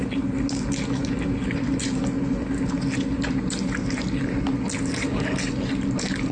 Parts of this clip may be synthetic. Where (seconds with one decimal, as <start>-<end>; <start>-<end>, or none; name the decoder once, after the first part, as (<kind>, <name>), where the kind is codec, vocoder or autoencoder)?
none